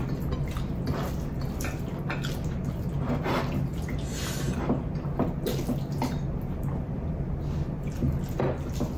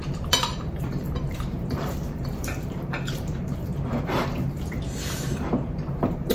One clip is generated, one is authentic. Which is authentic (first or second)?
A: first